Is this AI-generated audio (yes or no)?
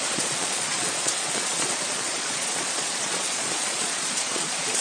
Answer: yes